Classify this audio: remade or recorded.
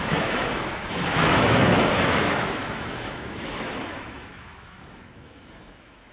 remade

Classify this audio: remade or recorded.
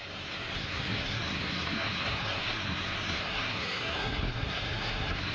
remade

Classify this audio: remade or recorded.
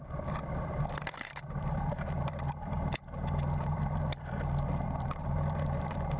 remade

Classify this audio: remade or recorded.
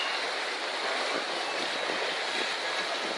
recorded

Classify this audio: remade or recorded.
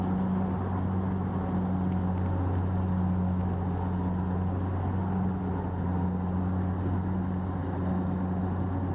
recorded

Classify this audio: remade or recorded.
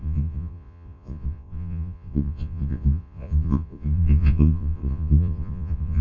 remade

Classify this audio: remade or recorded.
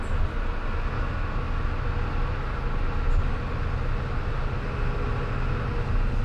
recorded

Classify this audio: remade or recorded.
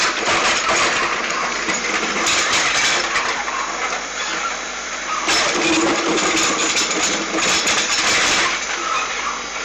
remade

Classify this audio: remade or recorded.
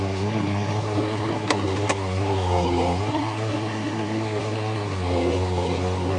remade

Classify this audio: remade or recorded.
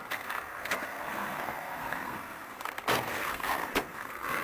remade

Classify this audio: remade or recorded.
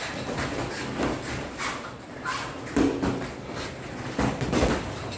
recorded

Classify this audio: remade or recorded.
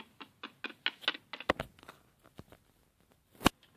recorded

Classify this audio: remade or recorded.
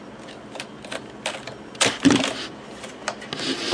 recorded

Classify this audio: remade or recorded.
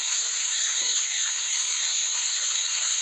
remade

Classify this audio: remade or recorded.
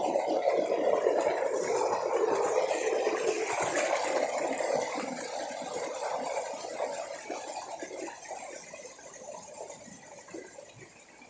recorded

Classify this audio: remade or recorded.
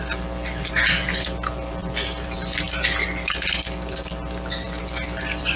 recorded